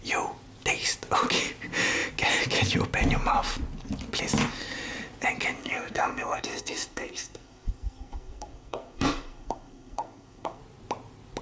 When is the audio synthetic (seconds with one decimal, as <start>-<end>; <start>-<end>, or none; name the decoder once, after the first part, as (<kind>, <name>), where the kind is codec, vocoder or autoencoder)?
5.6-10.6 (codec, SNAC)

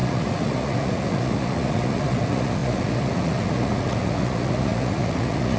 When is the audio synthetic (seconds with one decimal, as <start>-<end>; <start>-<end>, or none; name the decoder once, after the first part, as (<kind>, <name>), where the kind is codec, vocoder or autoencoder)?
0.0-5.6 (vocoder, Vocos)

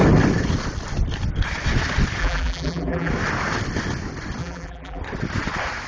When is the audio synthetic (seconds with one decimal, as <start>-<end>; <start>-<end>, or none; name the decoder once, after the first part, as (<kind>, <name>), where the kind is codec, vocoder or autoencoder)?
2.2-3.1 (vocoder, BigVGAN v2); 4.4-5.0

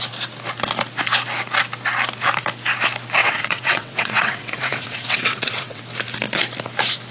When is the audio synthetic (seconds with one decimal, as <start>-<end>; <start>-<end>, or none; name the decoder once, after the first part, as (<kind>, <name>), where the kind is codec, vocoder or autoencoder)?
3.2-5.8 (vocoder, WaveNeXt)

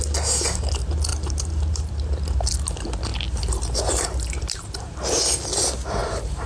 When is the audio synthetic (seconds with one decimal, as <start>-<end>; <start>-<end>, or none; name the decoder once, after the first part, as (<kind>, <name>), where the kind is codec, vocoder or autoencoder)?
1.1-1.9 (vocoder, BigVGAN v2); 3.1-5.2; 6.0-6.5